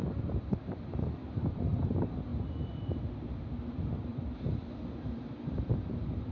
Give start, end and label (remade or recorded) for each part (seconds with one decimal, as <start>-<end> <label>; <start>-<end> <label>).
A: 0.0-1.7 remade; 1.7-4.1 recorded; 4.1-6.3 remade